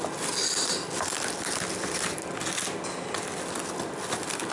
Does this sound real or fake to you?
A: real